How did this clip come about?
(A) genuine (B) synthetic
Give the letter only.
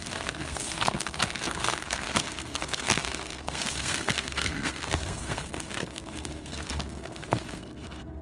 B